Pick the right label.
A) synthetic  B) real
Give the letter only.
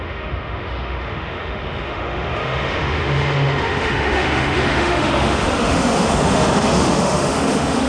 A